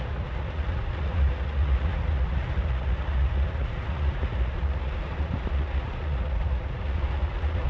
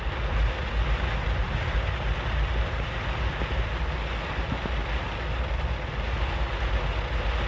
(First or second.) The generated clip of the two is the first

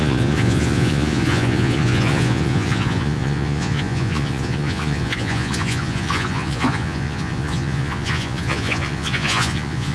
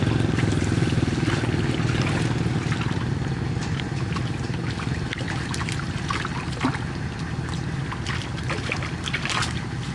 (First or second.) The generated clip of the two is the first